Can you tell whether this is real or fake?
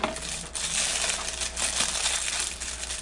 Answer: real